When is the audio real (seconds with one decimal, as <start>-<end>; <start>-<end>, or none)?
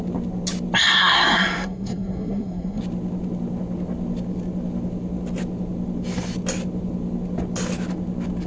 0.0-0.9; 2.8-8.5